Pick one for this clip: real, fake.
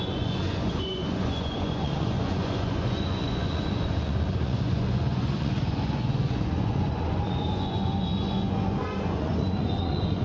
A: fake